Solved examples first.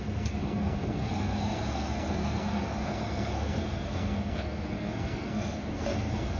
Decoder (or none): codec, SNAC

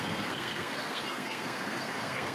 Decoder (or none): codec, SNAC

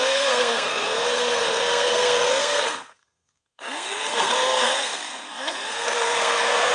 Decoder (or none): codec, SNAC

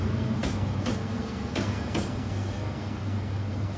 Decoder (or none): codec, SNAC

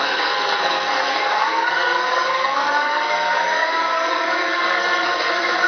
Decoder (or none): codec, SNAC